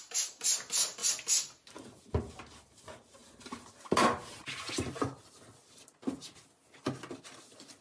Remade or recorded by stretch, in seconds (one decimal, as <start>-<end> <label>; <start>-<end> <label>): 0.0-3.2 recorded; 3.2-3.7 remade; 3.7-7.8 recorded